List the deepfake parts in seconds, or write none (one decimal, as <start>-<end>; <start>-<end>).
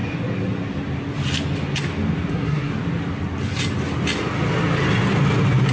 2.3-2.7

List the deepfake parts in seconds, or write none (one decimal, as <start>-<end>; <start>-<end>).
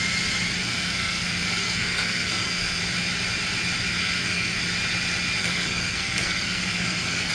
0.6-2.8; 3.9-4.6; 5.4-7.3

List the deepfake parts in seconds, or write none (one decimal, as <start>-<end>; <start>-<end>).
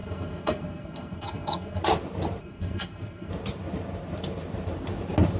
0.0-1.8; 2.4-3.3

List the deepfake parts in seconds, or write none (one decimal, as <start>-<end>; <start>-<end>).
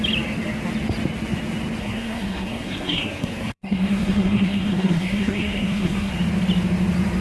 1.8-6.1